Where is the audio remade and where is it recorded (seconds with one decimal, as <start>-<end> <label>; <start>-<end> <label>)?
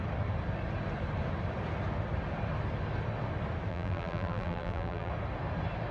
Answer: 0.0-3.7 recorded; 3.7-5.1 remade; 5.1-5.9 recorded